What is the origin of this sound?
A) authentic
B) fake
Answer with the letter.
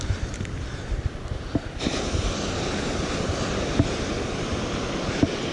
A